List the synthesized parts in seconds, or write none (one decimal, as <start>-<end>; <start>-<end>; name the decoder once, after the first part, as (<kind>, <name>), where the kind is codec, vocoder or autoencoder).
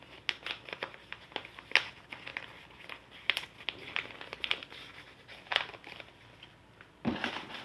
none